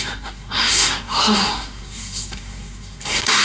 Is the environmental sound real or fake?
fake